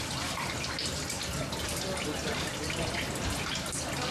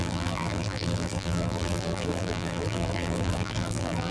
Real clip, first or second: first